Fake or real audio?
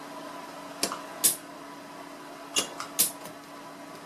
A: real